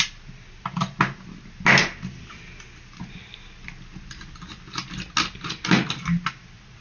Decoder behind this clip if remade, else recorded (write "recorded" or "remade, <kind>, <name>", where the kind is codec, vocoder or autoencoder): recorded